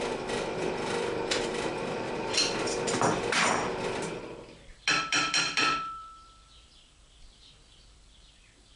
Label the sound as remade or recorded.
remade